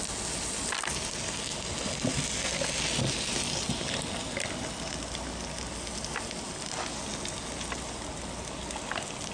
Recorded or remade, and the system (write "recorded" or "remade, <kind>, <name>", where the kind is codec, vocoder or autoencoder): recorded